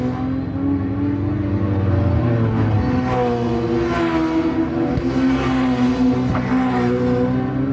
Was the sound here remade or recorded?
recorded